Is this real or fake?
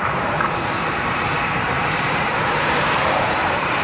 fake